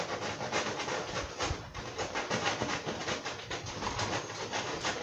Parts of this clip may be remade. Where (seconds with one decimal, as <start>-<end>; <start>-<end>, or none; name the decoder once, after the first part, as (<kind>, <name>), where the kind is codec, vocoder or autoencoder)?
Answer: none

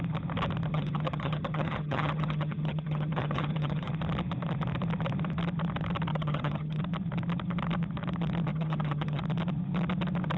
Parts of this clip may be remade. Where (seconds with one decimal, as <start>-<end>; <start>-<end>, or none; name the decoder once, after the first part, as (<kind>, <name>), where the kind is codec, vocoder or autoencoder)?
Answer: 0.7-3.9 (vocoder, HiFi-GAN); 6.1-6.8; 8.5-9.2

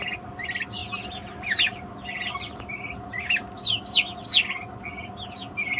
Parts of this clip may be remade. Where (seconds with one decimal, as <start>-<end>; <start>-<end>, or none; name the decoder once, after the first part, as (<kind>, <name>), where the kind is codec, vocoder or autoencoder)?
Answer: none

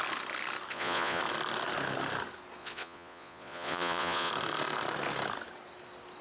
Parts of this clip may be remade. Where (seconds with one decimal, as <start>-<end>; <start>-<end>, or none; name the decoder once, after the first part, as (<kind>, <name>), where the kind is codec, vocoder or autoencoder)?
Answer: 0.7-1.2 (vocoder, Vocos); 2.6-4.3

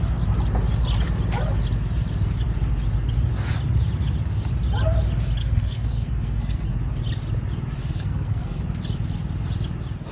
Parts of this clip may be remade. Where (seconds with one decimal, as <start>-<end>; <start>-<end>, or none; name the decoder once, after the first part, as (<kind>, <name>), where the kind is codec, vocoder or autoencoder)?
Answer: 5.4-6.7 (codec, SNAC); 7.8-8.6

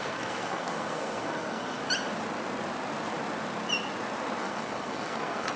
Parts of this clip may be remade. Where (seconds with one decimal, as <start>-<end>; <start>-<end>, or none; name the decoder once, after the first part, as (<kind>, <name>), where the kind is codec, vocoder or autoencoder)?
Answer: 0.0-1.8 (codec, SNAC); 4.4-5.6